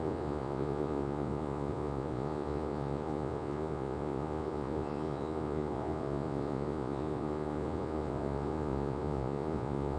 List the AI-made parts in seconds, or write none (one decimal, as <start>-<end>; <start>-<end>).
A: 0.0-10.0